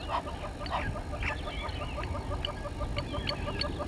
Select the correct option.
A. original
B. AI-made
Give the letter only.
A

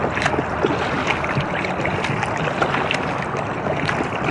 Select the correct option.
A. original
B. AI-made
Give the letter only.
A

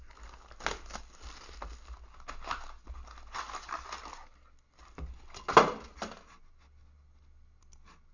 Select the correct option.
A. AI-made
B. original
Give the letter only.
B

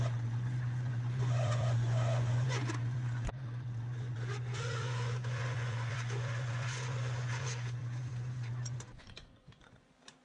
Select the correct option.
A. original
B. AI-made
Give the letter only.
B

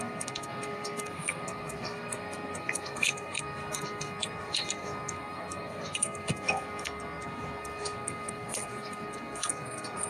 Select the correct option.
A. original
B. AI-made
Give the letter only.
B